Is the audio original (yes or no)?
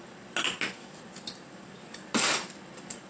yes